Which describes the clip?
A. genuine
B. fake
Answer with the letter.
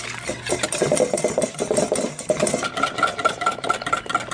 B